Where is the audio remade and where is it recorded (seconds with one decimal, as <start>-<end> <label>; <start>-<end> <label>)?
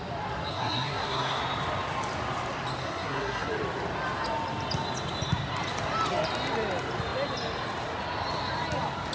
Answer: 0.0-0.5 recorded; 0.5-1.4 remade; 1.4-2.8 recorded; 2.8-3.5 remade; 3.5-9.1 recorded